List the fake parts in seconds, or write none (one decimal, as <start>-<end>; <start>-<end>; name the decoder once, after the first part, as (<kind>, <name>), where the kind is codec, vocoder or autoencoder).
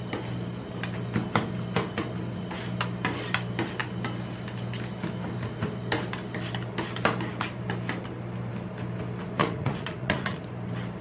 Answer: 9.4-10.4 (vocoder, Vocos)